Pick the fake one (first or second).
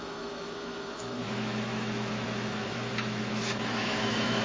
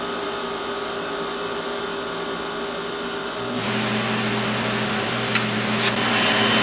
first